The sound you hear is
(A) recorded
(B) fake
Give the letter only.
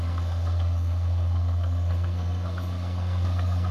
B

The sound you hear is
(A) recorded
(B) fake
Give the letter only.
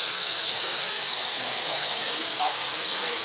B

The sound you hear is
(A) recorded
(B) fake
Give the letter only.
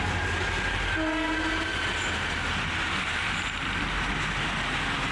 A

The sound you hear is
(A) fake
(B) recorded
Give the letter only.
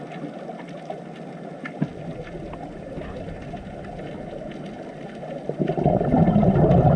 B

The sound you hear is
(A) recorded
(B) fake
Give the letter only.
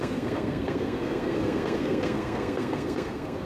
B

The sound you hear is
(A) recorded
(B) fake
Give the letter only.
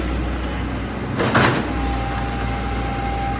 A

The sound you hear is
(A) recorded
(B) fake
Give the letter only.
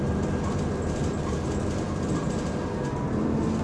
A